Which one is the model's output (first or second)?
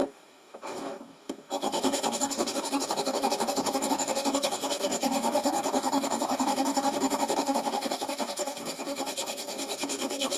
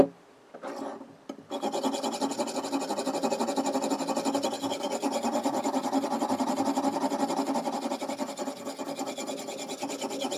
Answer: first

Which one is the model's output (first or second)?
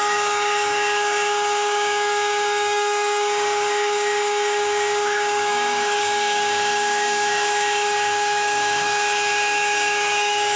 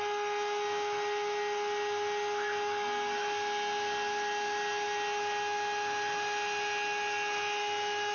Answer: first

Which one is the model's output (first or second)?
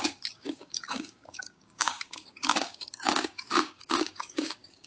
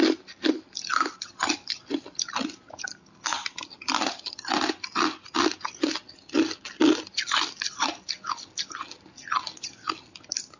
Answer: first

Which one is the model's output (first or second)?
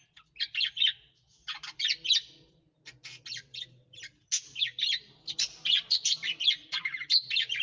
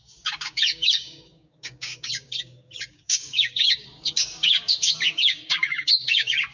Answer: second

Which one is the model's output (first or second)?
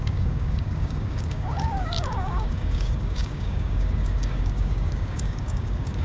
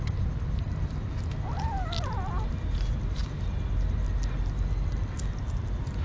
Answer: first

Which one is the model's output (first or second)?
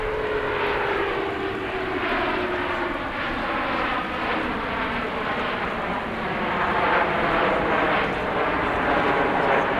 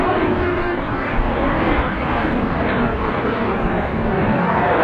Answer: second